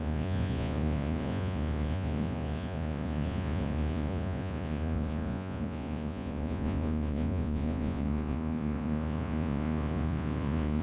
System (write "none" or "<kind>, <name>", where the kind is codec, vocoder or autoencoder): vocoder, Vocos